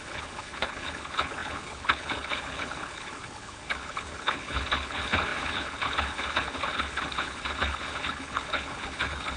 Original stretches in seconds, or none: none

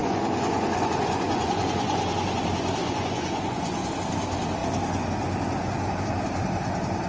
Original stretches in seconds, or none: 2.4-2.8; 3.9-7.1

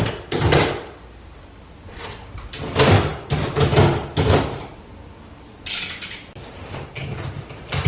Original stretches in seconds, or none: 0.0-7.9

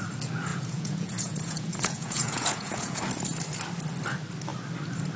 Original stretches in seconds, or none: 0.0-0.5; 3.0-5.2

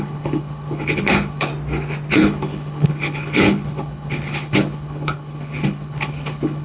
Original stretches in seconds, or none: 1.5-2.1

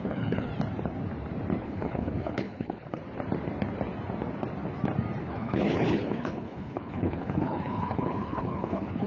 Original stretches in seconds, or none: 0.5-1.6; 3.0-5.2